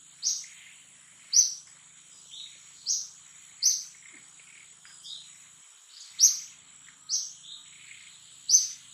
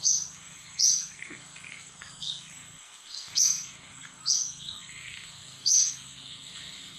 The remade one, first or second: second